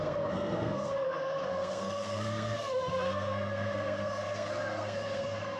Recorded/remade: remade